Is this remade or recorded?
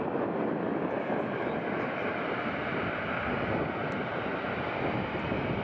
recorded